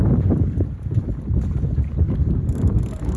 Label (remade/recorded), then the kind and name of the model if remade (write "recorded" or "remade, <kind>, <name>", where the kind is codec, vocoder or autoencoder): recorded